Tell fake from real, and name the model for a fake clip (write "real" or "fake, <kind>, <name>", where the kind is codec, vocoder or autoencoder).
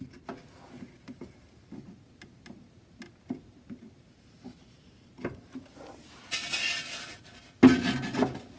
real